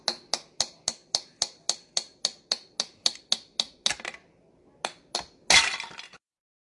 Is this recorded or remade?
recorded